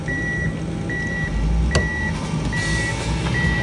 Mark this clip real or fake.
real